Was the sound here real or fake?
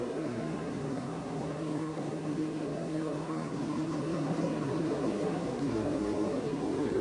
fake